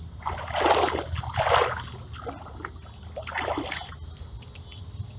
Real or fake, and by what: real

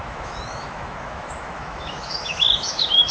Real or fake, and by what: fake, autoencoder, DAC-VAE